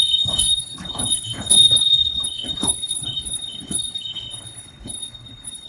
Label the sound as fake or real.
fake